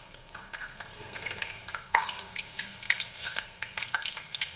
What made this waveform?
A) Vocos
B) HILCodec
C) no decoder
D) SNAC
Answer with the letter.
D